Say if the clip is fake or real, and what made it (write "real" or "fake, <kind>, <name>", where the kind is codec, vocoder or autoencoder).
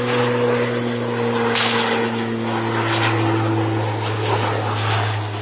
real